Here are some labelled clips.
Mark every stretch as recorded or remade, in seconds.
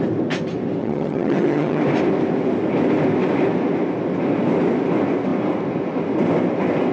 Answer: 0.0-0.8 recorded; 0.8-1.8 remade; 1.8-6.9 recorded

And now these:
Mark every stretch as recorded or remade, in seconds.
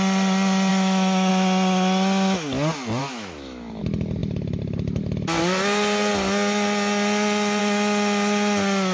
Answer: 0.0-0.7 recorded; 0.7-1.3 remade; 1.3-3.0 recorded; 3.0-3.8 remade; 3.8-8.9 recorded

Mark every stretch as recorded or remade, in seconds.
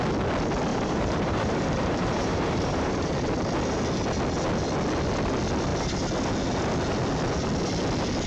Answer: 0.0-0.7 recorded; 0.7-3.1 remade; 3.1-8.3 recorded